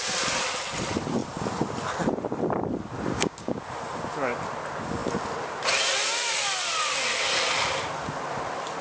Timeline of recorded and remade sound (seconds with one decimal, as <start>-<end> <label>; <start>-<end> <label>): 0.0-3.1 recorded; 3.1-3.6 remade; 3.6-8.8 recorded